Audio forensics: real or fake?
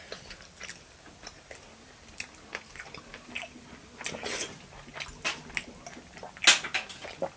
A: real